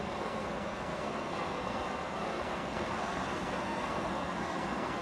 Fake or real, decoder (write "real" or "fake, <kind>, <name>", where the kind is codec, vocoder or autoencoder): fake, codec, SNAC